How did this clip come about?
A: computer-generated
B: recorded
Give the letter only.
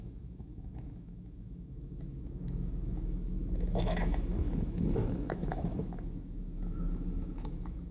A